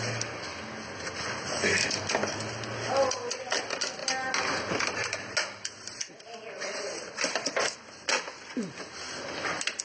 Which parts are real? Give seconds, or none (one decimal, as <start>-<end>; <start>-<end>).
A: 0.0-9.8